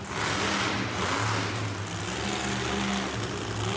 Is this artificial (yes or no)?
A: no